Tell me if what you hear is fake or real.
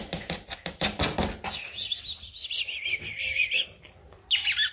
real